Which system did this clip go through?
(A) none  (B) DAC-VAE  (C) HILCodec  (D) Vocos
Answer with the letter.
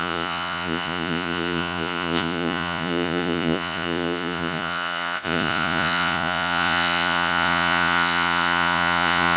D